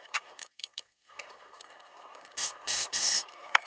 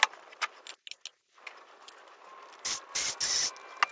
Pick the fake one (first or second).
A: first